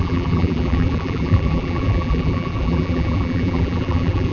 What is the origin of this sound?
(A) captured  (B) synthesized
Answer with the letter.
B